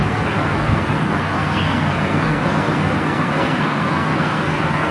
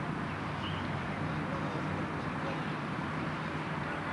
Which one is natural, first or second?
second